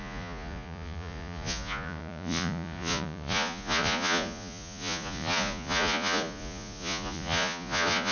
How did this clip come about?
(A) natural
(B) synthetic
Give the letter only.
B